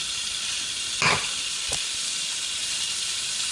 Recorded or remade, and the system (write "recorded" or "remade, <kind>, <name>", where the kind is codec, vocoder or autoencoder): recorded